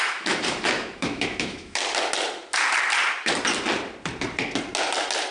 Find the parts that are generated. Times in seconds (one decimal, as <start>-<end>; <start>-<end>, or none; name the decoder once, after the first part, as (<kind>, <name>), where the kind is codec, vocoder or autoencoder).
0.0-1.8 (autoencoder, DAC-VAE)